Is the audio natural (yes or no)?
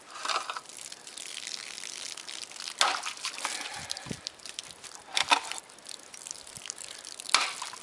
yes